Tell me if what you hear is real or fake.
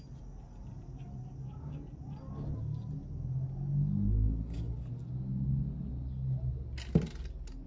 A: real